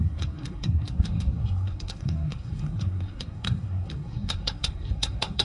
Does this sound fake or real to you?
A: fake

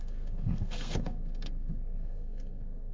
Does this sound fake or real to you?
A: fake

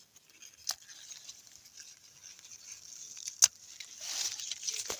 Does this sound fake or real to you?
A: real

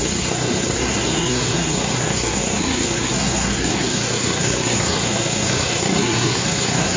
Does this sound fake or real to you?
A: fake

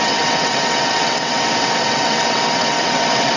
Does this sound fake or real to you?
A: fake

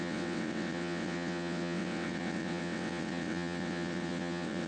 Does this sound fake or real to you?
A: fake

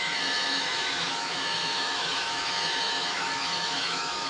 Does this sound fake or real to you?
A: fake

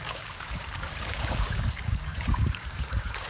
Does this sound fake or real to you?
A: fake